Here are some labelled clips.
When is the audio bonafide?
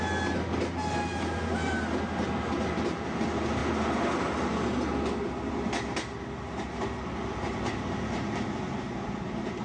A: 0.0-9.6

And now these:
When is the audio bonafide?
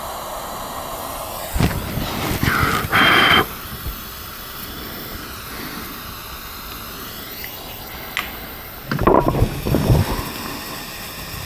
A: 0.0-2.7; 5.5-11.5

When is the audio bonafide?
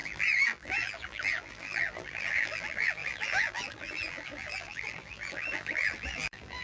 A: none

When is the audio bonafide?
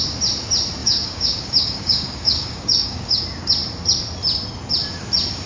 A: 0.0-0.8; 3.2-5.5